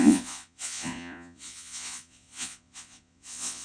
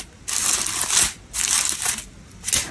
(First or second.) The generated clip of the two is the first